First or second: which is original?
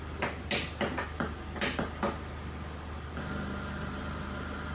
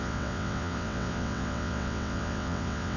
first